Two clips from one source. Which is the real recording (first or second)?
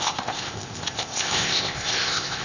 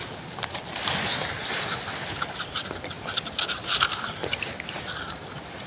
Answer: second